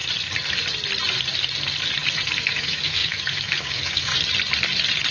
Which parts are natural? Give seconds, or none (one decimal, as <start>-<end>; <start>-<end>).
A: 0.0-2.4; 4.1-5.1